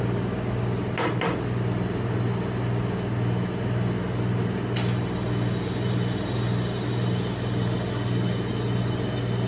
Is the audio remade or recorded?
recorded